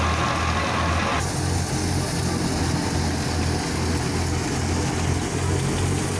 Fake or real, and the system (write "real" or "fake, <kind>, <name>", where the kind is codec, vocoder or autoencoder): real